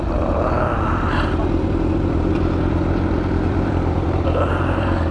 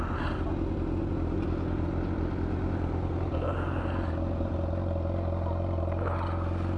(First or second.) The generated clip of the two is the first